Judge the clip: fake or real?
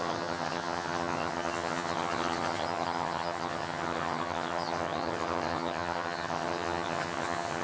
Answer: fake